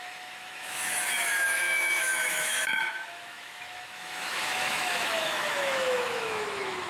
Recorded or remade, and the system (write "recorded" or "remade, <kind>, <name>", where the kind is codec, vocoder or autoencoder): remade, autoencoder, DAC-VAE